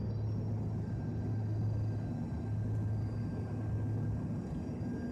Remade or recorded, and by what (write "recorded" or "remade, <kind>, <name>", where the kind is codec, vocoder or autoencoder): recorded